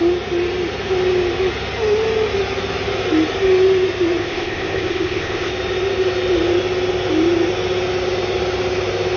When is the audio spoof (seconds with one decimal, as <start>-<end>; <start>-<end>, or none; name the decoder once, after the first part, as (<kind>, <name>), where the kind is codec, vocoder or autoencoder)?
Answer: 4.2-5.5 (codec, ZipCodec)

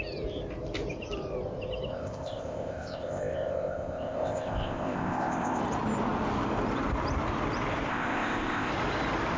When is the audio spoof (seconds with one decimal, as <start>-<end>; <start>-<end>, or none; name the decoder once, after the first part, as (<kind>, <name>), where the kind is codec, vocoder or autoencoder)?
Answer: 1.9-5.6 (codec, ZipCodec); 7.9-8.7

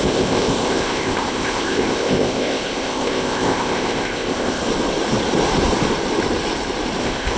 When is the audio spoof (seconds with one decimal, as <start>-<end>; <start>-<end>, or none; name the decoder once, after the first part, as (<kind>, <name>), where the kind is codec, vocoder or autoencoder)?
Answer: 0.0-4.6 (codec, ZipCodec); 7.0-7.4

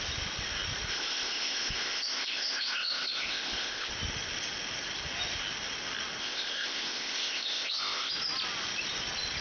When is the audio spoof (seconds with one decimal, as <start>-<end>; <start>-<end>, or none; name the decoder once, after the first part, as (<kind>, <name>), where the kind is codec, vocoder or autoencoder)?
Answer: 0.9-3.9 (codec, ZipCodec); 6.2-8.1

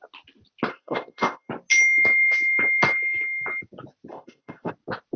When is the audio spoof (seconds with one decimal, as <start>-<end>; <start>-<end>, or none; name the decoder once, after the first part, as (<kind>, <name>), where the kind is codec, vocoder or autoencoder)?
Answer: 0.7-1.5 (codec, ZipCodec); 4.1-4.7

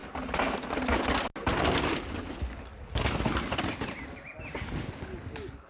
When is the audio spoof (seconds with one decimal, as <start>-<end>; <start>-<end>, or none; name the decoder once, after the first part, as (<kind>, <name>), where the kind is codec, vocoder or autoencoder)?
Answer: none